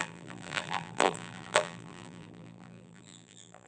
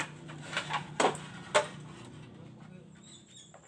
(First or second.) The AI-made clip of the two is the first